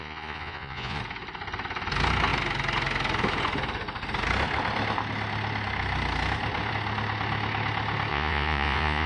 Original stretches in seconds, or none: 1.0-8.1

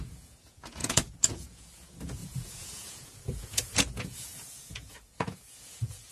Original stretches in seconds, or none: none